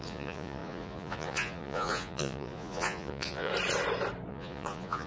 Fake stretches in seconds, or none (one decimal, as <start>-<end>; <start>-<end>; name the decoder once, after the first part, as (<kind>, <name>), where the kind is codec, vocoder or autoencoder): 0.0-3.5 (vocoder, Vocos); 4.3-5.1